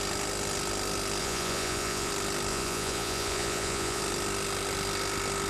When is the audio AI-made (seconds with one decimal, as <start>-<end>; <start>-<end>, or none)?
1.2-2.1; 2.5-4.0